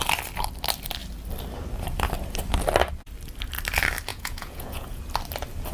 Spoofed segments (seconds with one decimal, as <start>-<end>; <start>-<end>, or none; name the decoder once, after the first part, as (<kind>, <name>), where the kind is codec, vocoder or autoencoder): 4.1-5.0 (vocoder, Vocos)